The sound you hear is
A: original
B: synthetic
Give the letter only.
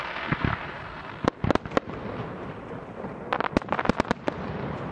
A